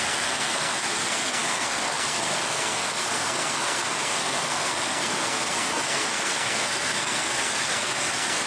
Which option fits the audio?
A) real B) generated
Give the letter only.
B